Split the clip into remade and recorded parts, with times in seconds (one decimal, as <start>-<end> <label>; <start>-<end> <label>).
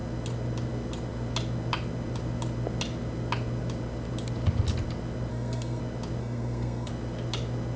0.0-5.3 recorded; 5.3-5.8 remade; 5.8-6.2 recorded; 6.2-6.9 remade; 6.9-7.8 recorded